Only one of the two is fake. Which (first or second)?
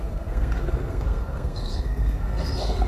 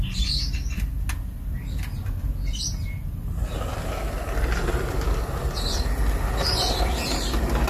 first